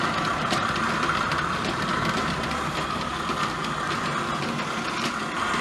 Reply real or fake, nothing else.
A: real